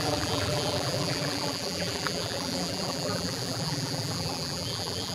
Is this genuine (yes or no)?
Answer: no